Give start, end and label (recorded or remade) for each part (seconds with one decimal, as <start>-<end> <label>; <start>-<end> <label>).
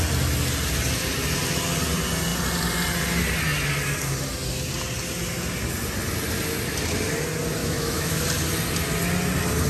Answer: 0.0-7.6 recorded; 7.6-8.2 remade; 8.2-9.7 recorded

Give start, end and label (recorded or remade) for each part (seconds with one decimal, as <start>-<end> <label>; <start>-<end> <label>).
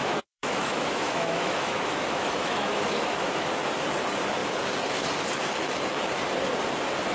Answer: 0.0-3.5 remade; 3.5-7.1 recorded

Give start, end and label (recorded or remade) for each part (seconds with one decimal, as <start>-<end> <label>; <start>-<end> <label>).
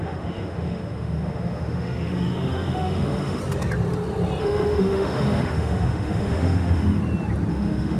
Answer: 0.0-3.4 remade; 3.4-4.4 recorded; 4.4-7.0 remade; 7.0-7.5 recorded; 7.5-8.0 remade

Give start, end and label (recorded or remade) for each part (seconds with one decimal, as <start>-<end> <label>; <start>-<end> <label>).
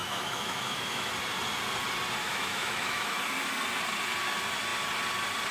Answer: 0.0-1.1 remade; 1.1-2.2 recorded; 2.2-3.2 remade; 3.2-5.5 recorded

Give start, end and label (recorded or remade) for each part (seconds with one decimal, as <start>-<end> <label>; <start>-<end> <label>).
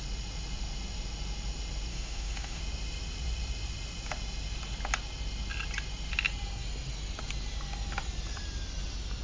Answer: 0.0-1.9 recorded; 1.9-2.6 remade; 2.6-9.2 recorded